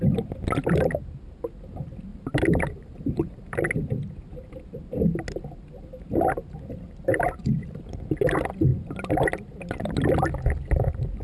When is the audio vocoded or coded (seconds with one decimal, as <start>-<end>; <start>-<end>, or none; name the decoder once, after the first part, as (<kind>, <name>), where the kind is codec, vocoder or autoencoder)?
2.1-3.7 (vocoder, BigVGAN v2); 7.1-7.8